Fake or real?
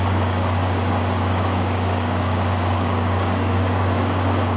fake